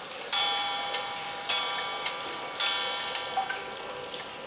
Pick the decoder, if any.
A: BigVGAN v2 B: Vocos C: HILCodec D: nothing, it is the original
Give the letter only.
A